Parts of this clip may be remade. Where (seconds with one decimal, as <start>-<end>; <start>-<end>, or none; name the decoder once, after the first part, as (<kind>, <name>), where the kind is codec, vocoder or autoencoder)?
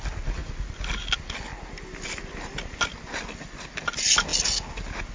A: none